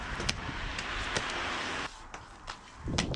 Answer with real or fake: real